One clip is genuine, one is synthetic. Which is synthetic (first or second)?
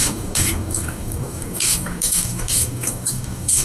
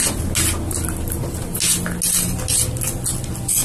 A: first